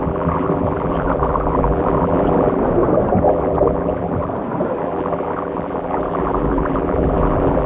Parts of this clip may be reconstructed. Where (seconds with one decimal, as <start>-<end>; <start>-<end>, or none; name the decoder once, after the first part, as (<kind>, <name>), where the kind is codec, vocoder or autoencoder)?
0.0-2.6 (vocoder, BigVGAN v2); 3.2-4.3; 4.8-7.7